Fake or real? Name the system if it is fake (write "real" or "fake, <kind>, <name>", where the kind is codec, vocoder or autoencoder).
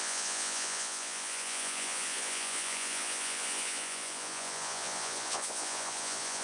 fake, vocoder, Vocos